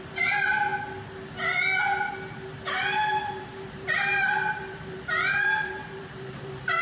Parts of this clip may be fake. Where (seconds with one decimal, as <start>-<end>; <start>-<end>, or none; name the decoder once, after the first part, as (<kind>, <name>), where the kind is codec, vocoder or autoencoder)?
0.0-0.7 (vocoder, BigVGAN v2); 3.4-6.8